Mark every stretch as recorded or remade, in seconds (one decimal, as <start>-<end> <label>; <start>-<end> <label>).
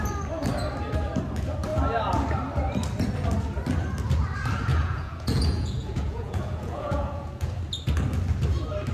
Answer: 0.0-4.7 recorded; 4.7-7.5 remade; 7.5-8.9 recorded